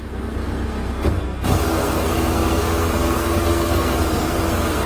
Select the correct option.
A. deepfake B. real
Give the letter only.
A